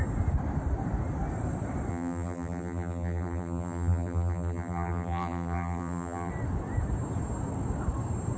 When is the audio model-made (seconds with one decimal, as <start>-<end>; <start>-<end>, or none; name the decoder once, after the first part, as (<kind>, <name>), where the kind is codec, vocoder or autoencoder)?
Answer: 1.9-6.3 (vocoder, BigVGAN v2)